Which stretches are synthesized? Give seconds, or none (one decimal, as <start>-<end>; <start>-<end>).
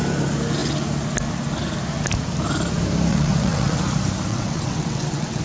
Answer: 3.1-3.8; 4.3-5.4